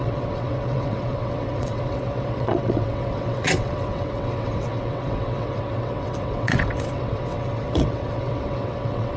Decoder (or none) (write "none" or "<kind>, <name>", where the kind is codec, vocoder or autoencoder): vocoder, WaveNeXt